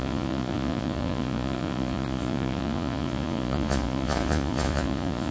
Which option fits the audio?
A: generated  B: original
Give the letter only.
A